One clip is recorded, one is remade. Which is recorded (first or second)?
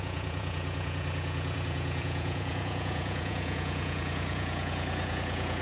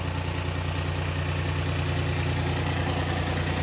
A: second